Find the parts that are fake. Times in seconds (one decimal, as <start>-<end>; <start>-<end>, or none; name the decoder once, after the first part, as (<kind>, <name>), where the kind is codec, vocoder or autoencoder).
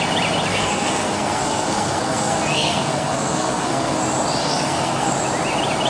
0.5-4.0 (codec, SNAC); 4.4-5.1